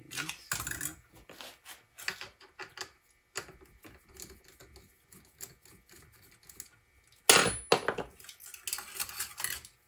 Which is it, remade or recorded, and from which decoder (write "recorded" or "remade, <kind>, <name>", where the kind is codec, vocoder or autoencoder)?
recorded